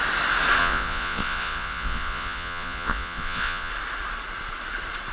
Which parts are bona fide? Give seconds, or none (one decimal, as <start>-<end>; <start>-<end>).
0.0-0.6; 3.7-5.1